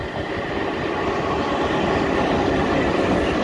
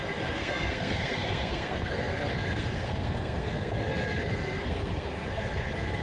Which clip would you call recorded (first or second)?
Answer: first